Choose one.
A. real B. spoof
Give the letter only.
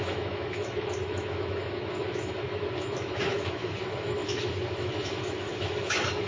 B